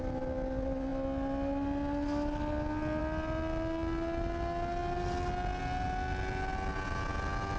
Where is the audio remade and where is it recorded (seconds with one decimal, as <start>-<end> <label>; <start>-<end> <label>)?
0.0-7.6 recorded